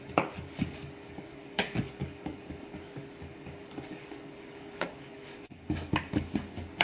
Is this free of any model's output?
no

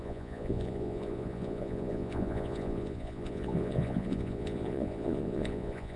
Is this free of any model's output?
no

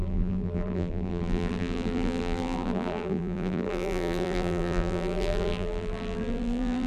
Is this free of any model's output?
no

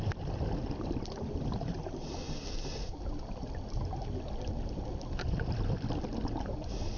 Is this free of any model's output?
yes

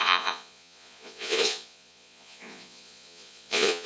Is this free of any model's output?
no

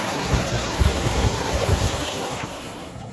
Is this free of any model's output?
no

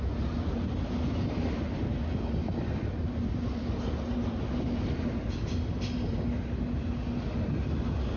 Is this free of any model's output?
yes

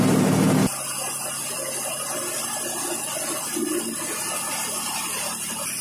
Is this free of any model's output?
yes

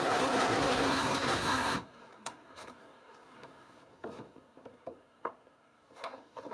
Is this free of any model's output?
no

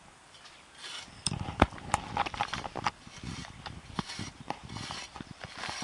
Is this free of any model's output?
no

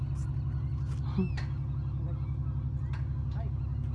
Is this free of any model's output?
yes